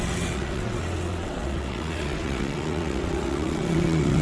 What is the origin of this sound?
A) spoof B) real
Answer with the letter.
A